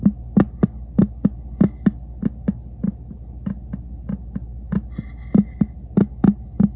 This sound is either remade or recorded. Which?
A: recorded